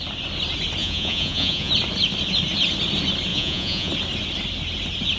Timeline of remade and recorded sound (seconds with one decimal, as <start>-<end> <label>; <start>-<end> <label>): 0.0-0.8 recorded; 0.8-1.7 remade; 1.7-3.3 recorded; 3.3-3.9 remade; 3.9-5.2 recorded